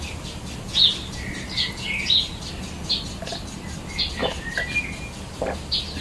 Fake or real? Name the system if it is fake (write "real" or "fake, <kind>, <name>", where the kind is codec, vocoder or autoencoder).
real